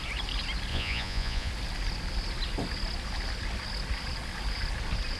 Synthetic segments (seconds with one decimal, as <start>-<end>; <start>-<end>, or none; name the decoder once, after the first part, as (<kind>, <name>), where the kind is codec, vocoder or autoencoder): 0.7-1.5 (vocoder, Vocos)